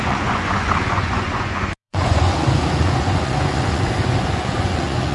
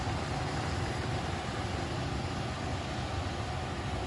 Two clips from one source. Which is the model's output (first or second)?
first